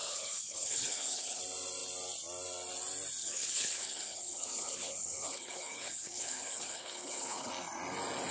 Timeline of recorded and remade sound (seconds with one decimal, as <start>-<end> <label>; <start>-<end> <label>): 0.0-1.4 remade; 1.4-3.2 recorded; 3.2-7.5 remade; 7.5-8.3 recorded